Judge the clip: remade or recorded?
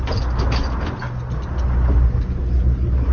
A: recorded